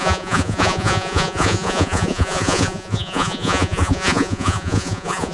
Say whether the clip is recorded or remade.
remade